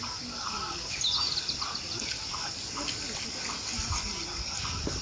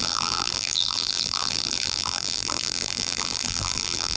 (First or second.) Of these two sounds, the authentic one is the first